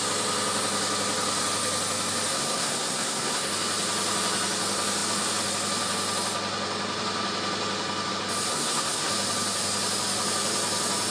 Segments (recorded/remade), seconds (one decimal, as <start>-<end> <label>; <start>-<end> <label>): 0.0-2.3 recorded; 2.3-3.5 remade; 3.5-8.5 recorded; 8.5-9.1 remade; 9.1-11.1 recorded